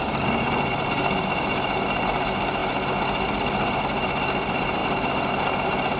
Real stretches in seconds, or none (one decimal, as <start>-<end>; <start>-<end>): 0.0-6.0